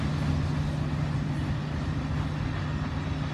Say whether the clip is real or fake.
real